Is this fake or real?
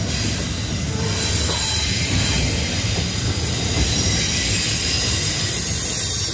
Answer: real